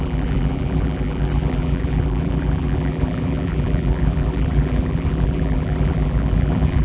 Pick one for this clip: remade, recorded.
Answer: remade